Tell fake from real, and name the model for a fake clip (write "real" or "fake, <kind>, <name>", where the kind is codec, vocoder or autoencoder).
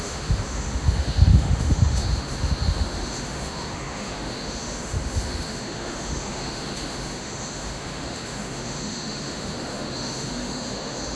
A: fake, autoencoder, DAC-VAE